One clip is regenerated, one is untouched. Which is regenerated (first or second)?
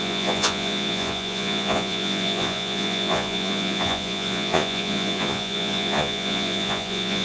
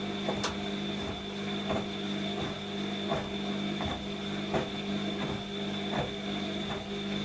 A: first